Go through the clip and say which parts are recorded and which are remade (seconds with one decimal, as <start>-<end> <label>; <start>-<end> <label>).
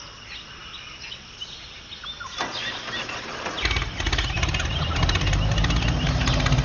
0.0-6.6 recorded